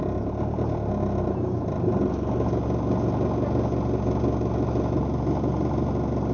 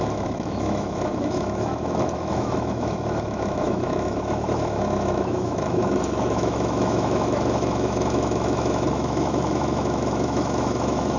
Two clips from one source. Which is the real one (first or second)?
first